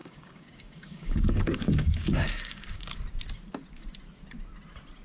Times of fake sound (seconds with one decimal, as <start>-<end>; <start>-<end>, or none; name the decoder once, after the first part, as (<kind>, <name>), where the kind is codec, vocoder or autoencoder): 0.0-3.0 (codec, DAC)